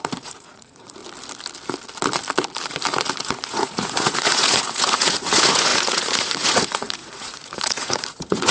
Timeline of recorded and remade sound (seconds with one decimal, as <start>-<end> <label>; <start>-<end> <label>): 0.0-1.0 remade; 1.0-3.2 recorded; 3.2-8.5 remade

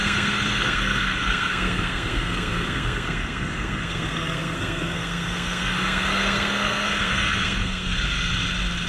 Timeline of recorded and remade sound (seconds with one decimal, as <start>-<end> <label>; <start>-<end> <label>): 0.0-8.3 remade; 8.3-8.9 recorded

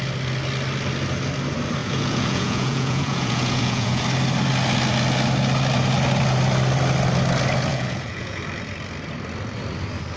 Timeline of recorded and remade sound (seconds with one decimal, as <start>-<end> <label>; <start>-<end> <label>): 0.0-1.8 recorded; 1.8-4.0 remade; 4.0-7.7 recorded; 7.7-8.4 remade; 8.4-10.2 recorded

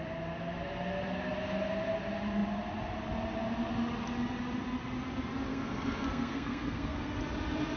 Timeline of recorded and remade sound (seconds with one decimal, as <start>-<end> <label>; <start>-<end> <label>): 0.0-5.5 recorded; 5.5-7.2 remade; 7.2-7.8 recorded

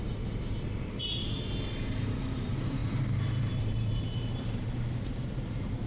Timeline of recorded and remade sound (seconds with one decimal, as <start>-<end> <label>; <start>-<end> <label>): 0.0-5.9 remade

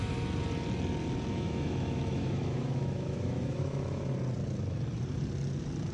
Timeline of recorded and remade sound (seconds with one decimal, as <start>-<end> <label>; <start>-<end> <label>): 0.0-1.3 recorded; 1.3-4.1 remade; 4.1-5.9 recorded

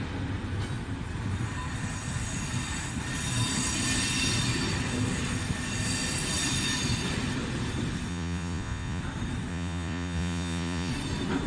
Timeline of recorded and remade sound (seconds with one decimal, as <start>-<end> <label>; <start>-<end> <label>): 0.0-8.1 recorded; 8.1-9.0 remade; 9.0-9.5 recorded; 9.5-10.9 remade; 10.9-11.5 recorded

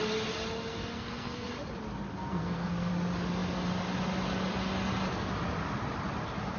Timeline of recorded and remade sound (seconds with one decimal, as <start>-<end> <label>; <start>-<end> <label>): 0.0-0.7 recorded; 0.7-1.5 remade; 1.5-2.1 recorded; 2.1-2.9 remade; 2.9-6.6 recorded